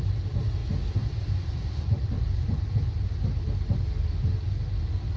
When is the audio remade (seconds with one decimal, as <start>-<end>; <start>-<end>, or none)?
0.6-3.1